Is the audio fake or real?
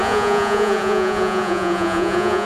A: fake